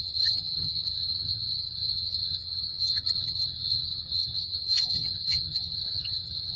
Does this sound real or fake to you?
fake